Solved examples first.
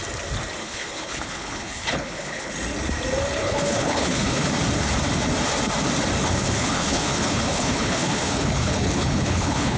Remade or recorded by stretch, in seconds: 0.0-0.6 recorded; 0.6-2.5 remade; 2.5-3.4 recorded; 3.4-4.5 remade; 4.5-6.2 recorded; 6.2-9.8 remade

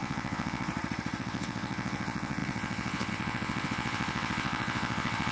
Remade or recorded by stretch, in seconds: 0.0-0.7 remade; 0.7-1.2 recorded; 1.2-5.3 remade

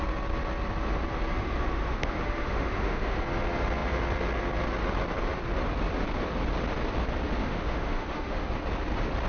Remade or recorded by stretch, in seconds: 0.0-1.4 recorded; 1.4-3.2 remade; 3.2-7.4 recorded; 7.4-8.5 remade; 8.5-9.3 recorded

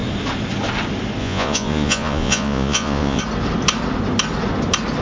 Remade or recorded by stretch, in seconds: 0.0-1.2 recorded; 1.2-3.2 remade; 3.2-5.0 recorded

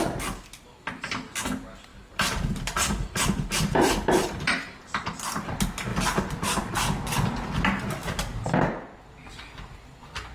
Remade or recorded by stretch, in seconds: 0.0-1.9 recorded; 1.9-4.8 remade; 4.8-5.9 recorded; 5.9-6.7 remade; 6.7-10.3 recorded

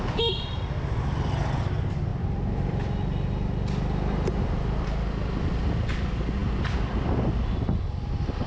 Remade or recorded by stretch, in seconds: 0.0-8.5 recorded